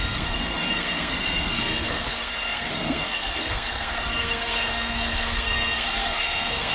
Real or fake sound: fake